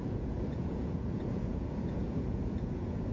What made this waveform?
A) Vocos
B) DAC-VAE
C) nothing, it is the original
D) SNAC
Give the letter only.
A